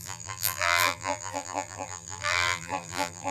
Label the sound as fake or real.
fake